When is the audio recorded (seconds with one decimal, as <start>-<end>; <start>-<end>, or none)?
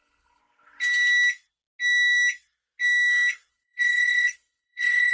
0.4-3.5